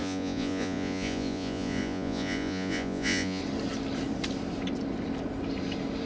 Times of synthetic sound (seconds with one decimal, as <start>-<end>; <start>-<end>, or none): 0.0-3.4

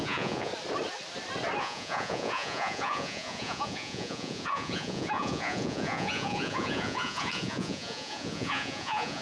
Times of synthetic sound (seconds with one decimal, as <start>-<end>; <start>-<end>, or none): 0.0-0.5; 1.6-9.2